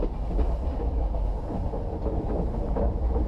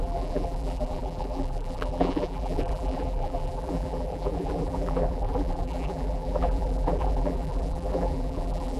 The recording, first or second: first